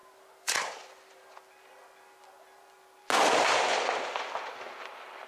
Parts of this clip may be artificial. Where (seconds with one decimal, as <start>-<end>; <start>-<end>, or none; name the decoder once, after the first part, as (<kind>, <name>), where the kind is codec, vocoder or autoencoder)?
none